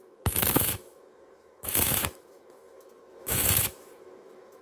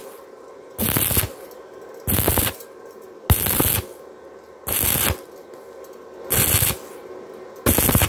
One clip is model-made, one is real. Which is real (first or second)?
second